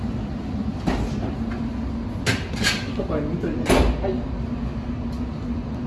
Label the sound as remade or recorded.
recorded